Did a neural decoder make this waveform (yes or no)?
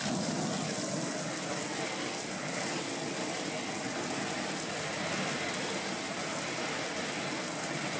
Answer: no